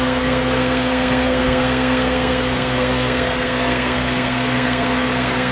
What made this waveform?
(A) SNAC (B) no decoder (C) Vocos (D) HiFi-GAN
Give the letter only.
A